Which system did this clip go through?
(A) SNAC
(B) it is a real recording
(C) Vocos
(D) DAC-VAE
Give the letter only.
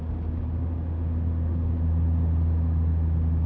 B